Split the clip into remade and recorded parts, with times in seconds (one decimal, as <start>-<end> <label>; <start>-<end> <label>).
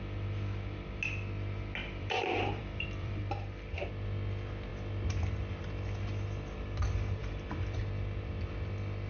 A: 0.0-1.8 recorded; 1.8-3.2 remade; 3.2-7.2 recorded; 7.2-7.8 remade; 7.8-9.1 recorded